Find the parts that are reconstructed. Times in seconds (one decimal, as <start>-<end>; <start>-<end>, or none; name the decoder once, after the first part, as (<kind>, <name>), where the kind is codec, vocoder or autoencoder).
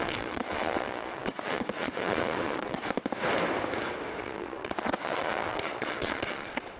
0.0-2.8 (vocoder, Vocos); 4.2-6.8